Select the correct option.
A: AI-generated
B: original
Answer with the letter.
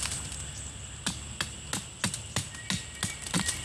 B